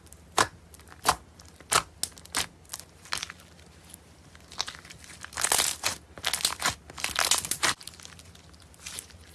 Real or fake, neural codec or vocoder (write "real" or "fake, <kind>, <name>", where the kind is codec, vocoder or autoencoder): real